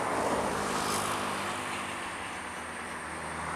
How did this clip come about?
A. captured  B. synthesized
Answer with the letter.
A